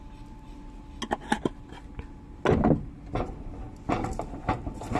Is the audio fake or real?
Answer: real